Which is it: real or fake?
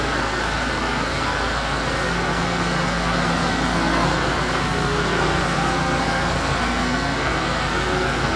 fake